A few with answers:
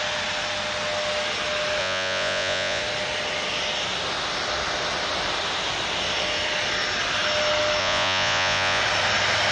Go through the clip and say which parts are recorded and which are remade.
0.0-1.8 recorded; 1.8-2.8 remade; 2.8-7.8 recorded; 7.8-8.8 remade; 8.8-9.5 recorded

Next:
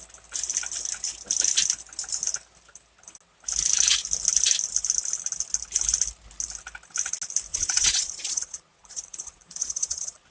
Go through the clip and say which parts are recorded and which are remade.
0.0-7.5 recorded; 7.5-10.3 remade